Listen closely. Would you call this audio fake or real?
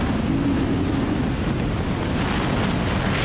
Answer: real